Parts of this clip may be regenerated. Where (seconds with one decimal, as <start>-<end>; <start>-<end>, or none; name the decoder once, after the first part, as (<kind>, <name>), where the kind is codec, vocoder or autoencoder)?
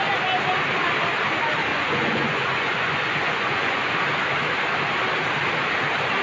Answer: 1.7-3.9 (vocoder, Vocos)